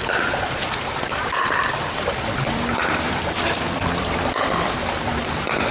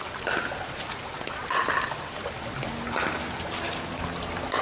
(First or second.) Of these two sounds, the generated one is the first